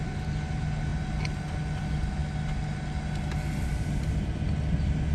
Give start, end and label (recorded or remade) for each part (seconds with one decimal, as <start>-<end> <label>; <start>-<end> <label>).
0.0-5.1 recorded